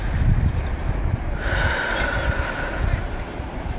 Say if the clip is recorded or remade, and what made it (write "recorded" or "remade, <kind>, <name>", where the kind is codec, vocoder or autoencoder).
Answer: recorded